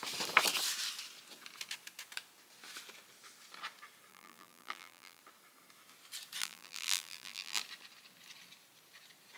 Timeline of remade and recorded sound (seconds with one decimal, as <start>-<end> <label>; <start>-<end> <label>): 0.0-4.1 recorded; 4.1-5.2 remade; 5.2-6.4 recorded; 6.4-7.6 remade; 7.6-9.4 recorded